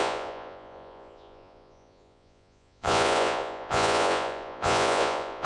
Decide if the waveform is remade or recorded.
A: remade